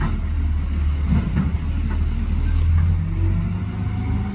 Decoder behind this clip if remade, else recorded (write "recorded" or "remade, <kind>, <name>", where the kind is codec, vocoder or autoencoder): recorded